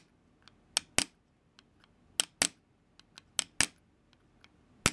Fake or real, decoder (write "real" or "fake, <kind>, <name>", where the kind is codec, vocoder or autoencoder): real